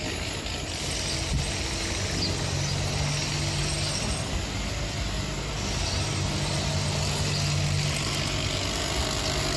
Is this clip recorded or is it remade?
recorded